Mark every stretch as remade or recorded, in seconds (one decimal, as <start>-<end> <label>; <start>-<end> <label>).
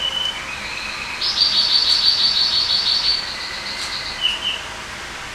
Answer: 0.0-5.3 recorded